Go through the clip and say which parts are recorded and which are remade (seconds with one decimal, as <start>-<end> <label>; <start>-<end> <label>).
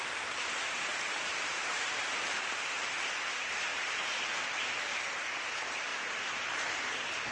0.0-3.7 remade; 3.7-4.3 recorded; 4.3-7.3 remade